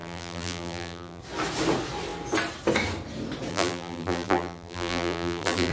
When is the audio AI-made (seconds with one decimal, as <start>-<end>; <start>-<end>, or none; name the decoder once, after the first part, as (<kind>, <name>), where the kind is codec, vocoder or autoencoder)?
0.0-1.2 (vocoder, BigVGAN v2); 3.5-5.7